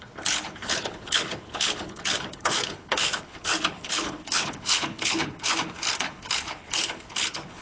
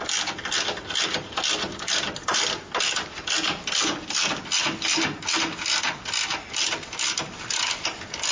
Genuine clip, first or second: second